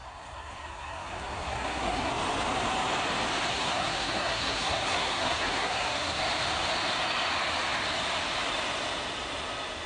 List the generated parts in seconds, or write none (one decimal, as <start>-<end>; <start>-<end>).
0.0-2.1; 3.5-6.2